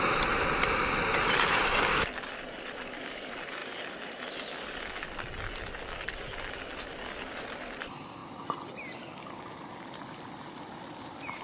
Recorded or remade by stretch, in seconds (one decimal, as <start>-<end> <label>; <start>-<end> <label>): 0.0-3.6 remade; 3.6-7.7 recorded; 7.7-8.2 remade; 8.2-9.6 recorded; 9.6-11.4 remade